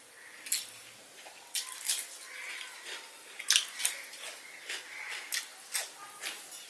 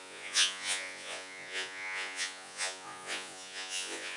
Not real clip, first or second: second